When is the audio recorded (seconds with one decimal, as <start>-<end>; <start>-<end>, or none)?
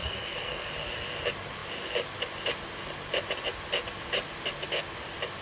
0.7-5.4